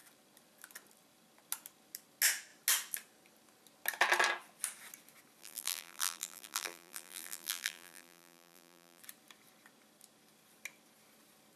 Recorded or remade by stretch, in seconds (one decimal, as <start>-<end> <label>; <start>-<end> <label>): 0.0-5.4 recorded; 5.4-9.0 remade; 9.0-11.6 recorded